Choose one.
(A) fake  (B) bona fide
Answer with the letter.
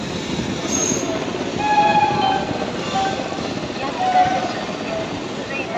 B